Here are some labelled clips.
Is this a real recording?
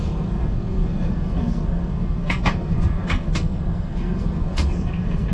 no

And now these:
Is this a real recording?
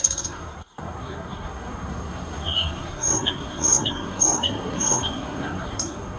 no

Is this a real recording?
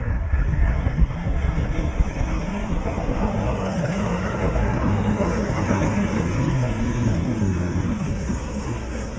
no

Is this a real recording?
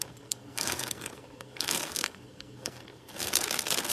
no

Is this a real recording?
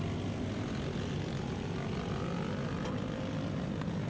yes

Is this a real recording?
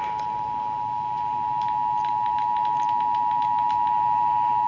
yes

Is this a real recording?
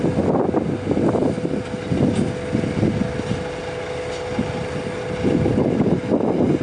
yes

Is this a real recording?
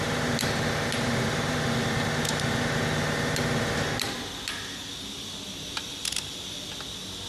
yes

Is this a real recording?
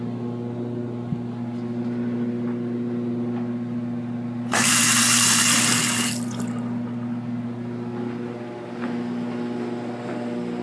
yes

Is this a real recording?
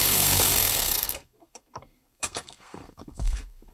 no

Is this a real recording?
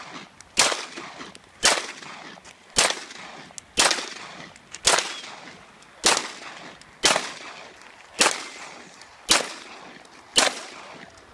yes